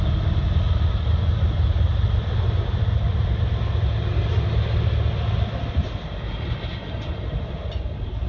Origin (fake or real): real